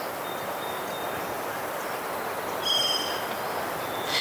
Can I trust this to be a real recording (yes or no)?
yes